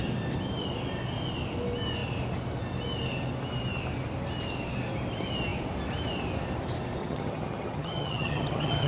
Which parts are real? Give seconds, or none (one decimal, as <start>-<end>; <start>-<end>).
0.0-7.0